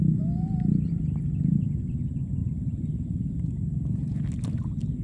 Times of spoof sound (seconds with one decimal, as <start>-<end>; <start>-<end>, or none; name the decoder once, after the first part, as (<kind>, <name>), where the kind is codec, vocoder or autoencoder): 2.4-3.5 (vocoder, BigVGAN v2)